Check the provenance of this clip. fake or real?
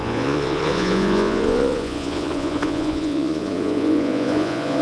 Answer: fake